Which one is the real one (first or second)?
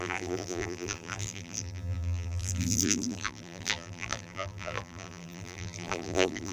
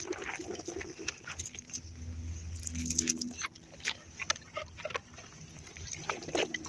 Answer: second